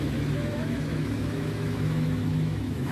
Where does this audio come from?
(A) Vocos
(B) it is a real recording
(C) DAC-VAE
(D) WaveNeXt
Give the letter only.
C